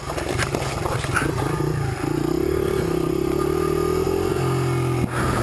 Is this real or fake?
real